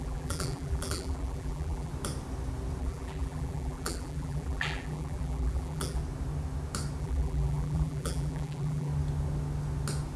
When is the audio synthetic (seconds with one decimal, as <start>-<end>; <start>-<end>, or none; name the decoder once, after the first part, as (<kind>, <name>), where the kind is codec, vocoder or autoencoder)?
0.0-1.9 (vocoder, BigVGAN v2); 2.8-6.0; 7.0-8.9

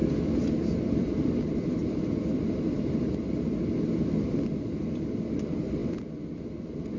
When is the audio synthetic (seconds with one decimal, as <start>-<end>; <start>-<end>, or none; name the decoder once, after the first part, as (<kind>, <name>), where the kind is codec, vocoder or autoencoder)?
0.0-5.8 (vocoder, BigVGAN v2)

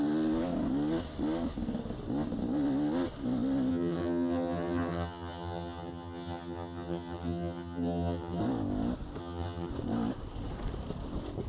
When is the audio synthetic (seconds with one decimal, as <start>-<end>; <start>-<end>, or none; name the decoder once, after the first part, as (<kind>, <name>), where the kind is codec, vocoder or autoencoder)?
3.7-8.4 (vocoder, HiFi-GAN); 9.2-9.7